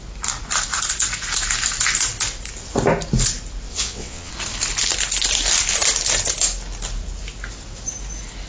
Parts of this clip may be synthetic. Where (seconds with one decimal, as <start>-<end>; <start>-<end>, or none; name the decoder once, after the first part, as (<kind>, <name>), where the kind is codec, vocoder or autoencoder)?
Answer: 3.7-4.3 (vocoder, WaveNeXt)